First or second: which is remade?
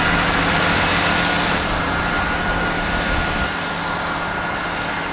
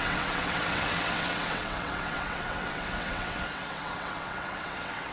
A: second